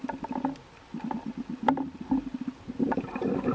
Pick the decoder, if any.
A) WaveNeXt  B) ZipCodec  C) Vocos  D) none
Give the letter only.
D